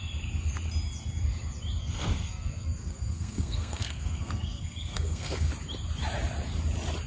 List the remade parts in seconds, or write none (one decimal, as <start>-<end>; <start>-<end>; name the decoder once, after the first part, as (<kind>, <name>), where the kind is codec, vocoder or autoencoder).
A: 1.8-5.5 (codec, SNAC)